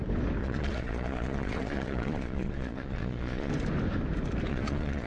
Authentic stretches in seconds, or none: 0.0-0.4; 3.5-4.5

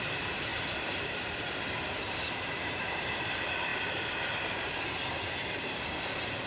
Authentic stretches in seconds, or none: none

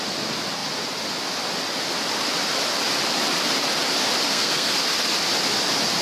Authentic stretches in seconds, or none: 0.0-4.3; 4.8-6.0

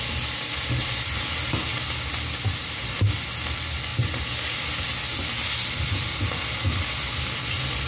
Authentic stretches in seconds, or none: 0.0-7.9